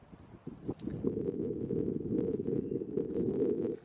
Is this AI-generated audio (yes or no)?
no